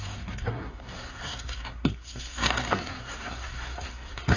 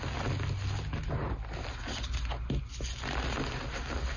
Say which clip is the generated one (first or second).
first